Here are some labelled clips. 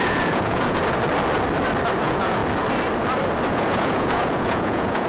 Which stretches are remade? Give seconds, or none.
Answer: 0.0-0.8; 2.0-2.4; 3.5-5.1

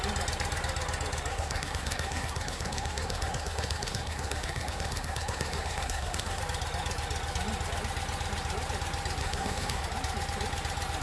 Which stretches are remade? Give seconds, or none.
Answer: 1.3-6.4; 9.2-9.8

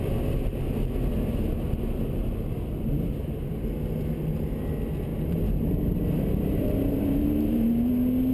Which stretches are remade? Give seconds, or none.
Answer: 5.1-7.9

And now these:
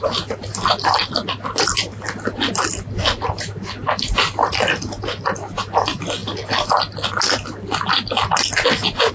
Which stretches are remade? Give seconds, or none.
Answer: none